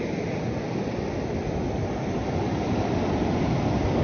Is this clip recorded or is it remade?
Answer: recorded